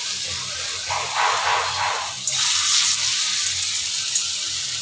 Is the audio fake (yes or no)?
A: no